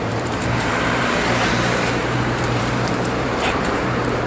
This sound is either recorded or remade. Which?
remade